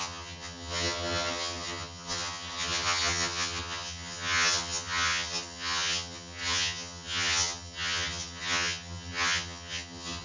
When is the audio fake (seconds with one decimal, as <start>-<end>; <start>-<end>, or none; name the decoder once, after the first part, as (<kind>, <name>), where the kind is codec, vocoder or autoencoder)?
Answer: 0.0-10.2 (vocoder, HiFi-GAN)